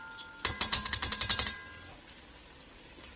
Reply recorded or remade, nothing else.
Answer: recorded